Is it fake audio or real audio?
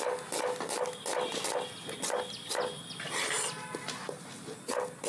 real